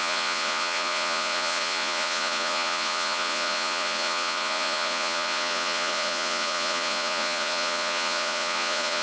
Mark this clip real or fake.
fake